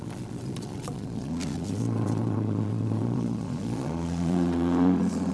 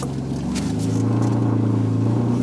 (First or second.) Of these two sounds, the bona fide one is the second